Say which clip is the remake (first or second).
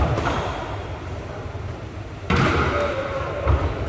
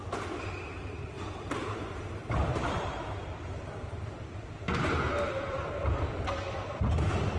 second